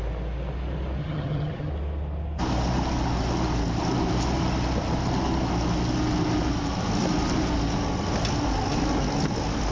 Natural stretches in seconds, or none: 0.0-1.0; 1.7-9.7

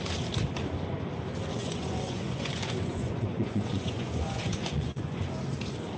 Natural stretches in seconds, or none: 0.0-1.6; 5.2-6.0

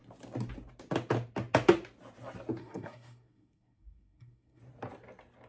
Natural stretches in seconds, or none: 0.0-2.6; 4.6-5.5

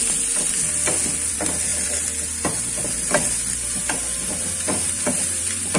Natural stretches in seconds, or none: none

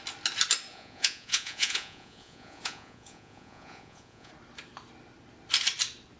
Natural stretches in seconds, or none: 0.0-0.7; 4.3-6.2

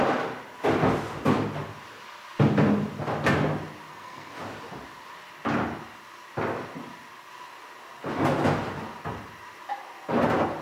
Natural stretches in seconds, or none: 0.0-3.9; 4.4-10.6